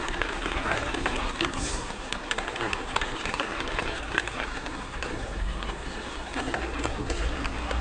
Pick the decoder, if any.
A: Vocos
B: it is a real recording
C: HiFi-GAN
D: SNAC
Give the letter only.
D